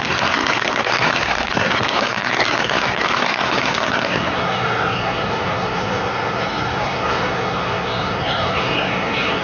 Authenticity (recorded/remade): remade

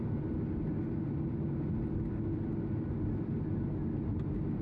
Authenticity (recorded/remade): recorded